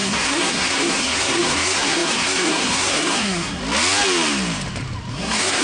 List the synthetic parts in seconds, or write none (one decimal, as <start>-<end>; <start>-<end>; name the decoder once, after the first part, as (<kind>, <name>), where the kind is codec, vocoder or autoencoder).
0.0-3.6 (codec, SNAC); 5.1-5.6

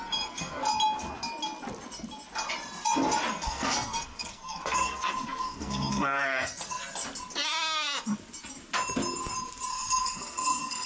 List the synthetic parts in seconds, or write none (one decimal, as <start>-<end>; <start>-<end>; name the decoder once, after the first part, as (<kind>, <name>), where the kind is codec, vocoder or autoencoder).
0.0-0.6 (codec, SNAC); 3.3-6.8; 9.7-10.9

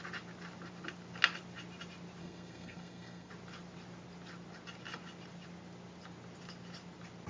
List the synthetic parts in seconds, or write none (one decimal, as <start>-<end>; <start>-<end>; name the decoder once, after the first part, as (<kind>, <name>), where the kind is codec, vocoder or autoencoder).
2.2-3.3 (codec, SNAC)

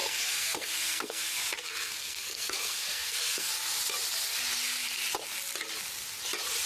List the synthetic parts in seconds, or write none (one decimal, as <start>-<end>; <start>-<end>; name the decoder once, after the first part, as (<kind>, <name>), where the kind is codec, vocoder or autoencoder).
0.0-3.5 (codec, SNAC)

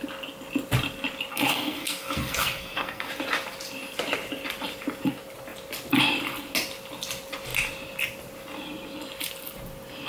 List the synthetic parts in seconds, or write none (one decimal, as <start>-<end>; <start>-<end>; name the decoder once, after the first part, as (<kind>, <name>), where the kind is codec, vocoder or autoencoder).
1.3-3.1 (codec, SNAC)

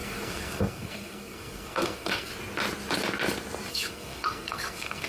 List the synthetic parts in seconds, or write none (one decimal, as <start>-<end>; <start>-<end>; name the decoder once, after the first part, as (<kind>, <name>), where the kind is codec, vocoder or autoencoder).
0.0-2.3 (codec, SNAC); 3.7-5.1

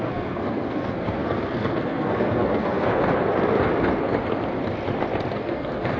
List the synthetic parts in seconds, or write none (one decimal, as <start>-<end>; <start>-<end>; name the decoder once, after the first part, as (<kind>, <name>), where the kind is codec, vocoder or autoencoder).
0.0-3.1 (codec, SNAC); 5.3-6.0

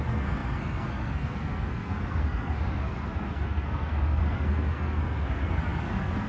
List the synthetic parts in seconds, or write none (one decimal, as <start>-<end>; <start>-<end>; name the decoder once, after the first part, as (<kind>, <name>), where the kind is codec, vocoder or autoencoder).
0.0-6.3 (codec, SNAC)